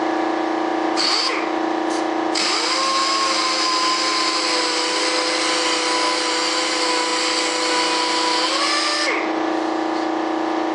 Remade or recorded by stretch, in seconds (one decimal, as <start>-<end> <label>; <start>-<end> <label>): 0.0-10.7 recorded